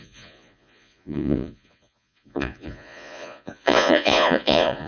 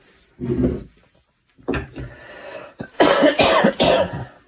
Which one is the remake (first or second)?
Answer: first